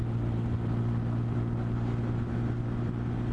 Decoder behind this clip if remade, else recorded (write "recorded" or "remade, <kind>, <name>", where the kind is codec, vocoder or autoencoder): recorded